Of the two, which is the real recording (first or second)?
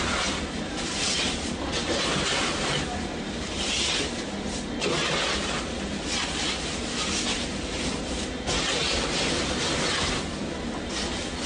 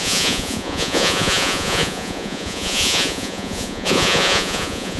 first